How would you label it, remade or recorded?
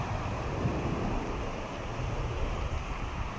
recorded